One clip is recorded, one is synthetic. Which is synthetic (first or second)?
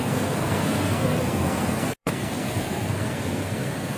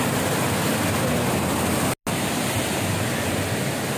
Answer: first